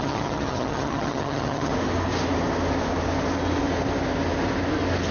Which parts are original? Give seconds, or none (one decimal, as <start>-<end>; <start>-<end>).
1.7-5.1